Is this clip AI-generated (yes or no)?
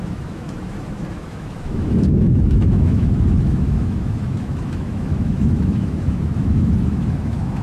yes